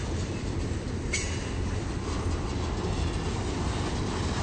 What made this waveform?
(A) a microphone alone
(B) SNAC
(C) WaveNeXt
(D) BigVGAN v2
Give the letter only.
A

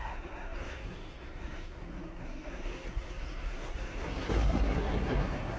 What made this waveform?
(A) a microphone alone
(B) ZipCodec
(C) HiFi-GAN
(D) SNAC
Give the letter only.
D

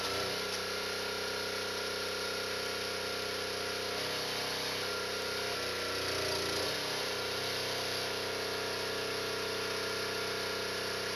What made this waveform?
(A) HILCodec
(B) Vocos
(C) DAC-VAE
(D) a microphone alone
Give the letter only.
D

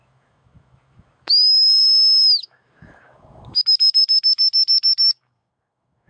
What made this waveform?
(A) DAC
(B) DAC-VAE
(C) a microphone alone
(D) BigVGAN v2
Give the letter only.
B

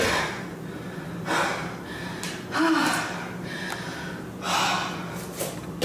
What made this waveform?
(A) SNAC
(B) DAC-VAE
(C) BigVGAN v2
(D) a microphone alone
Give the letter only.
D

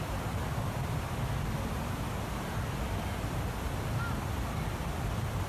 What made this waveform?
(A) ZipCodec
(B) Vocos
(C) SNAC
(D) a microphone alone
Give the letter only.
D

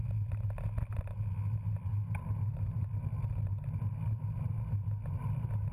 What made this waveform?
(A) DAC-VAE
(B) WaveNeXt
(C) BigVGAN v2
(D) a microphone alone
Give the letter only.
D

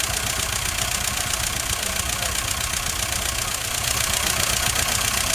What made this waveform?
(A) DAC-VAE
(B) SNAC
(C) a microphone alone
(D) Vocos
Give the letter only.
C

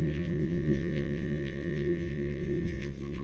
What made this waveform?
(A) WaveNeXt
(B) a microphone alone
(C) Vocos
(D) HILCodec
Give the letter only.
A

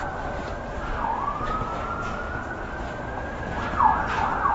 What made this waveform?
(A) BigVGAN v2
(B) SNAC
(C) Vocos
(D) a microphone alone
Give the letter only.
D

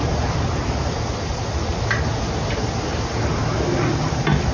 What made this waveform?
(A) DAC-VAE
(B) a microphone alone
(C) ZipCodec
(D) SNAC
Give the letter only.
B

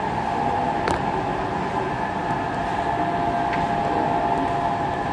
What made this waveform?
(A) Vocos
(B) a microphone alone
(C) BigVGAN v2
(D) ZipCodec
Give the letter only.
B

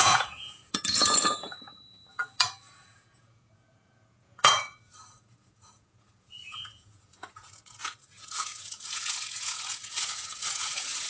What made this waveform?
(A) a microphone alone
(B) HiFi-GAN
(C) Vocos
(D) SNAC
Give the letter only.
C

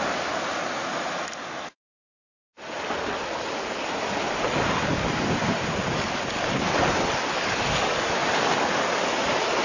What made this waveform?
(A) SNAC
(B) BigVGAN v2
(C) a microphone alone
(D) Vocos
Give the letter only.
C